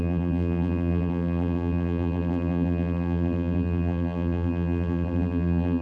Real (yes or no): no